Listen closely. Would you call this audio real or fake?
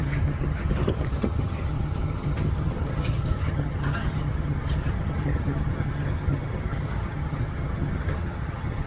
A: fake